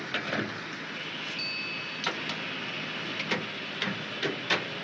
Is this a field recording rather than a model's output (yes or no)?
yes